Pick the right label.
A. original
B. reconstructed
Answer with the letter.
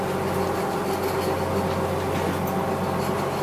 A